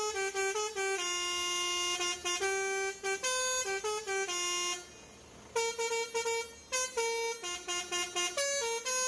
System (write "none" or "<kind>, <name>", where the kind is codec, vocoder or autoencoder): none